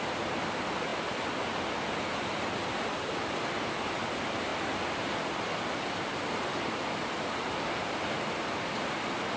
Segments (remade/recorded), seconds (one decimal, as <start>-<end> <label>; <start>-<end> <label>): 0.0-9.4 recorded